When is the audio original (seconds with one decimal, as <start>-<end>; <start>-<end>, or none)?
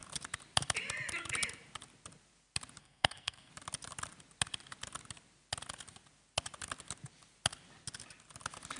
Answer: 0.0-2.8; 3.5-8.8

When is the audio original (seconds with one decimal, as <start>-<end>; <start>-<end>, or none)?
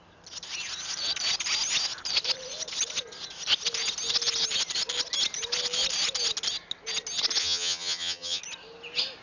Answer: 0.0-7.4; 8.4-9.2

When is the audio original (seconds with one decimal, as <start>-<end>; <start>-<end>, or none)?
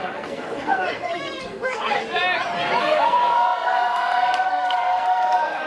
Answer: 2.0-2.8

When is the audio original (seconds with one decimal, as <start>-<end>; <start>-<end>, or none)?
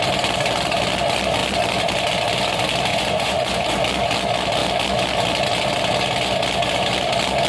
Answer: 0.0-2.9; 3.8-7.5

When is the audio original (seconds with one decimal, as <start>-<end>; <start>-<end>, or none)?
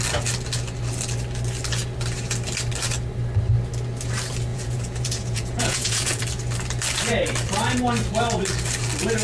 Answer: 0.0-4.5; 6.2-9.2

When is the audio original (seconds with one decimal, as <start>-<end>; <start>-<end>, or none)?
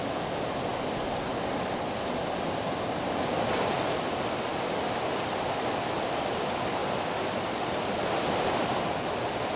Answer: 6.8-8.4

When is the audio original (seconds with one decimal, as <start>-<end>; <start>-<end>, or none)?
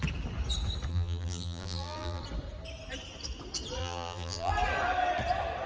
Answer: 0.0-0.9; 2.2-3.8; 4.5-5.7